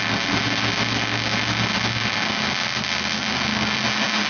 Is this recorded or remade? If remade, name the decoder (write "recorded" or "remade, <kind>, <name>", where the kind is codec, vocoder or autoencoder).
recorded